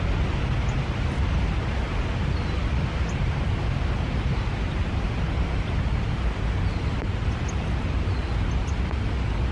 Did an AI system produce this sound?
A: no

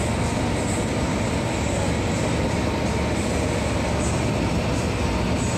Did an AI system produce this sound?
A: no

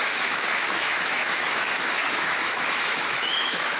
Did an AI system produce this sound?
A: yes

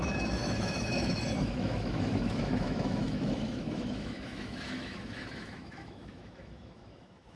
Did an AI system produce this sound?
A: yes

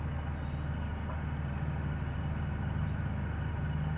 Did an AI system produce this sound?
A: no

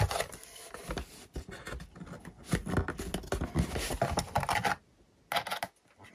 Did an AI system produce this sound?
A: no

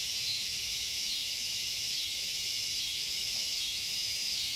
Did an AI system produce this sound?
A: yes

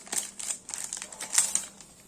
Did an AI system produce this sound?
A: no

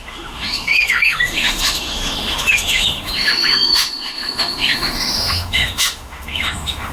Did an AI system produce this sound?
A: yes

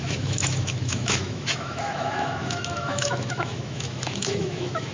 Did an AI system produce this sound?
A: yes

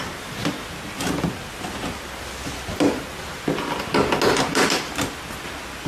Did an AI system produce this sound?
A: no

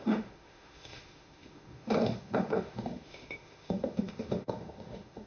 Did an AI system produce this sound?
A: yes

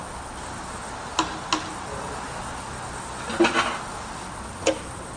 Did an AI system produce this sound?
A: no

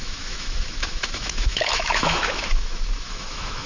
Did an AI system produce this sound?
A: yes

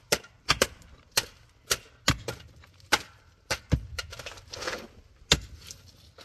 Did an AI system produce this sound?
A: no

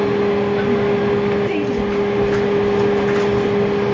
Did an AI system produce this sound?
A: no